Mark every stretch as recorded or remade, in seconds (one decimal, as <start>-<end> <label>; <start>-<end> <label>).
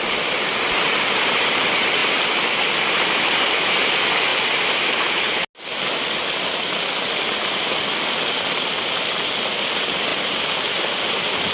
0.0-11.5 recorded